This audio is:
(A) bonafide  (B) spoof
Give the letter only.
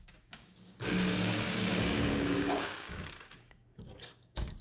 B